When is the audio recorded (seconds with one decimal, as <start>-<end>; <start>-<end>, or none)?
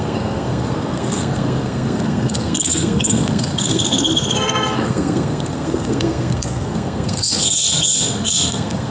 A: none